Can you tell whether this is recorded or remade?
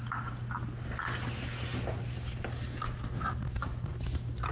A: recorded